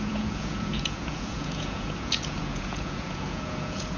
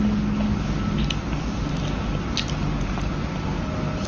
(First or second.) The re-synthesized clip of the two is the first